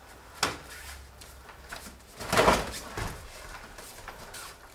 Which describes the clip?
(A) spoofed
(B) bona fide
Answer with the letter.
B